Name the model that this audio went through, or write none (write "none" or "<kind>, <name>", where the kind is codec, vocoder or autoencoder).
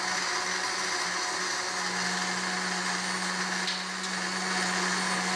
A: none